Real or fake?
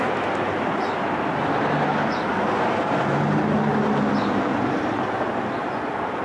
real